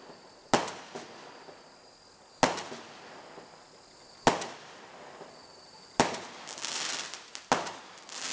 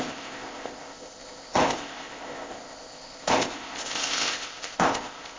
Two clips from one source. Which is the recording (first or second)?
first